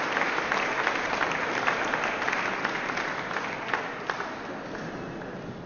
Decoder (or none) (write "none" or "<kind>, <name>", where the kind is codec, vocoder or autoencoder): none